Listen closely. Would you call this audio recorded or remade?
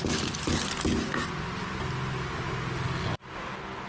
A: recorded